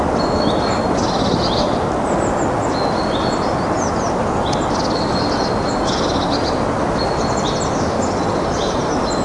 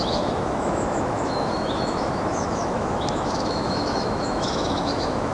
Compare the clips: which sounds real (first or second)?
first